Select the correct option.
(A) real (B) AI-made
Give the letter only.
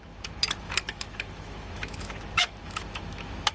B